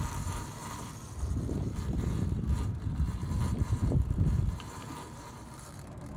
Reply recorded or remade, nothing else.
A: remade